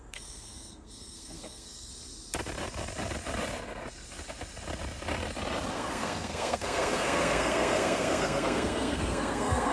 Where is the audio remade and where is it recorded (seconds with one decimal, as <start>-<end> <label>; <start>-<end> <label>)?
0.0-1.9 remade; 1.9-5.7 recorded; 5.7-9.7 remade